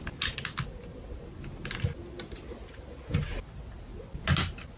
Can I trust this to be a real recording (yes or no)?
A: yes